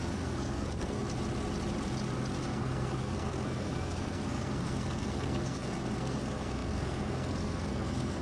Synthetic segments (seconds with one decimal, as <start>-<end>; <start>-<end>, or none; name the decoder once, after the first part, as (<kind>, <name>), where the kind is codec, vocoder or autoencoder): 0.0-1.0 (codec, SNAC); 2.4-8.2